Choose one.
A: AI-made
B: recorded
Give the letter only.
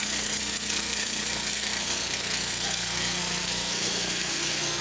A